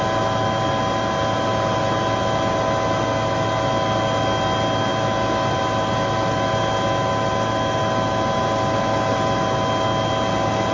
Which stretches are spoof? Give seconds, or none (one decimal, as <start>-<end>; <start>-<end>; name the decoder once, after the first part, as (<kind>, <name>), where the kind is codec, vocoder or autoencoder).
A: none